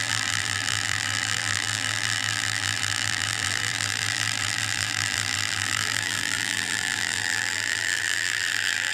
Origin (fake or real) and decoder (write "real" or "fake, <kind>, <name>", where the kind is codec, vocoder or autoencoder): fake, vocoder, BigVGAN v2